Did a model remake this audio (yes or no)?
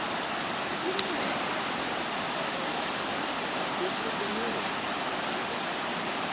yes